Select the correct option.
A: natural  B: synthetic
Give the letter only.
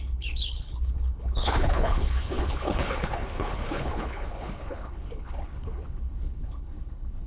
B